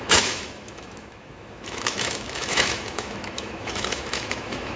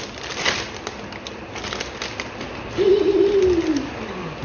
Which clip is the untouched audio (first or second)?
second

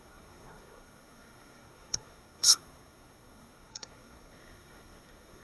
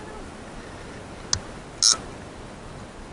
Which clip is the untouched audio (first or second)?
second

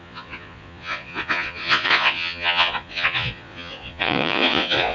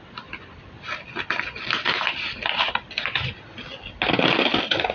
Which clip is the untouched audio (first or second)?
second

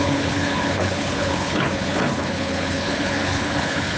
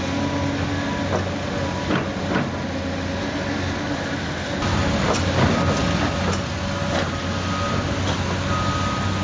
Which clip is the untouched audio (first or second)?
second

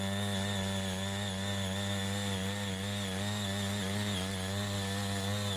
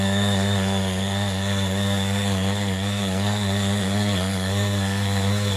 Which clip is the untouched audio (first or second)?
first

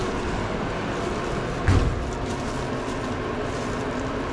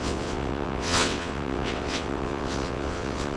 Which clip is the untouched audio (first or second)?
first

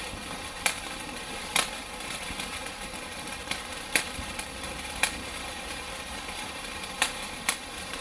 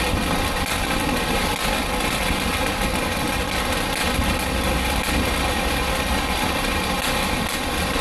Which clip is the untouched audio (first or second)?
second